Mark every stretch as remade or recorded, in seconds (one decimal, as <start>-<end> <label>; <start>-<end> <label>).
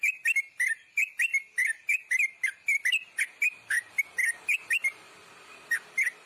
0.0-6.2 recorded